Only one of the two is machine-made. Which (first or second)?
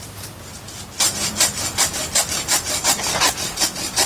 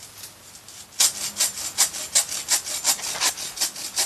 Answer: first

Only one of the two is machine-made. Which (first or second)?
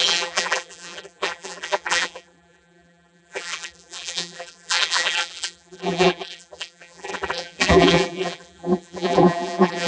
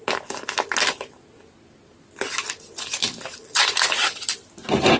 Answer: first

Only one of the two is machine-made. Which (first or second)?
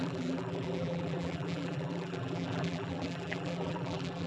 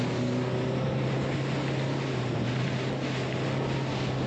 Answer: first